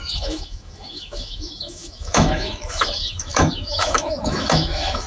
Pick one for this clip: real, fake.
fake